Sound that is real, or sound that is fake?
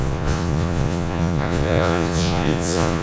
fake